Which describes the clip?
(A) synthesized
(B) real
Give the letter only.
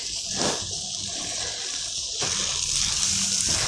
B